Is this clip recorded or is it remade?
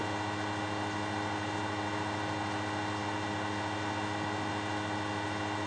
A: recorded